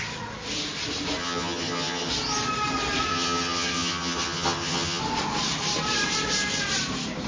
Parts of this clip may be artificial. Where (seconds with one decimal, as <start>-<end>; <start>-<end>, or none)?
1.2-2.1; 3.1-5.0